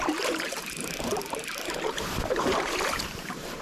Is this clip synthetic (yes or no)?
yes